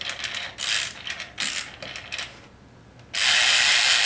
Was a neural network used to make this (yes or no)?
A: no